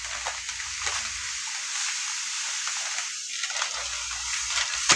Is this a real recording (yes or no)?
yes